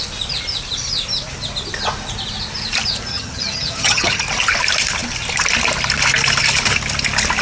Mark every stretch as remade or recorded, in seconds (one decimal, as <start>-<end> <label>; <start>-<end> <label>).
0.0-3.1 recorded; 3.1-4.2 remade; 4.2-7.4 recorded